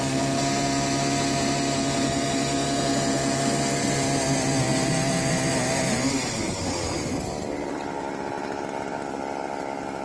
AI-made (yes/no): no